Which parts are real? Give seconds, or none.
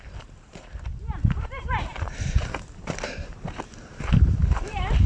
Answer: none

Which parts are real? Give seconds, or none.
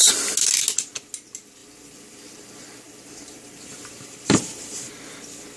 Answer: 0.0-1.6; 4.9-5.6